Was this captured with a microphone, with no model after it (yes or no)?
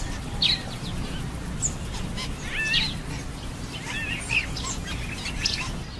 yes